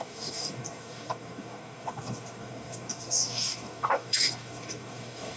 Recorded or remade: remade